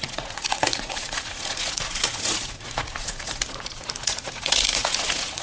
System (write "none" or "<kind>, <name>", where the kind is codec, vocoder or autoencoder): vocoder, Vocos